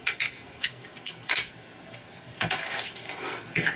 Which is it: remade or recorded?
remade